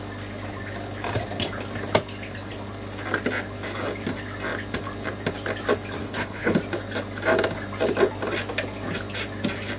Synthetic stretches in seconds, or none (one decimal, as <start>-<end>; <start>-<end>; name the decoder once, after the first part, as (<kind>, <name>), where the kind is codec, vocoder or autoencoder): 6.0-6.5 (codec, HILCodec)